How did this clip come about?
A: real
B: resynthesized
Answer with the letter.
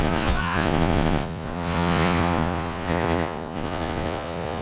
B